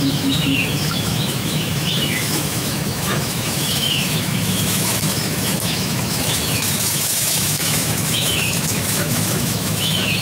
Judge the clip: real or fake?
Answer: fake